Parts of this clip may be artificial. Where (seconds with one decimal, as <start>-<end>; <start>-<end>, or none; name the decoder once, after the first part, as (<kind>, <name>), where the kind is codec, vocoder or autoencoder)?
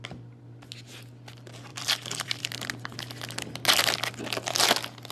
1.7-2.4 (vocoder, BigVGAN v2)